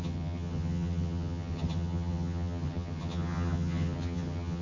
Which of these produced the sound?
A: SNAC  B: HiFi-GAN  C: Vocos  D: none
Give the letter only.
B